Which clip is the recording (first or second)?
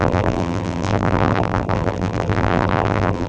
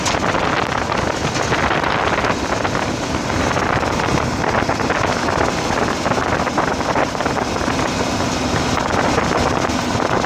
second